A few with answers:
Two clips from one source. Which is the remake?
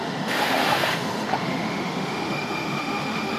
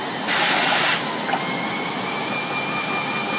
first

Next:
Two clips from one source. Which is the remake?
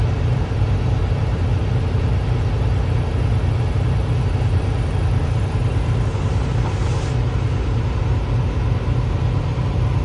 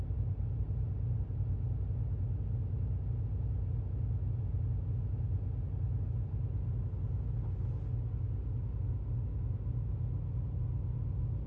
first